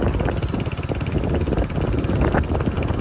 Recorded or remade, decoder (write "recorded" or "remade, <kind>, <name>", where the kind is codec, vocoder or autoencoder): recorded